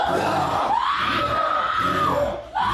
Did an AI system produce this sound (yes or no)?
yes